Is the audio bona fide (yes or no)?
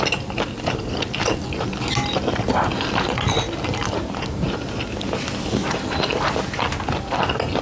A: yes